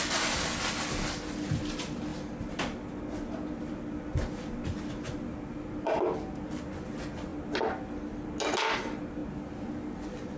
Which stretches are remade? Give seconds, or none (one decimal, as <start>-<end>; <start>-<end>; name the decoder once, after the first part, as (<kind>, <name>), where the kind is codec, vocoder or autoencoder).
none